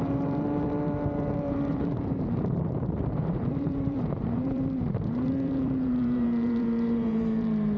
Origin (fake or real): fake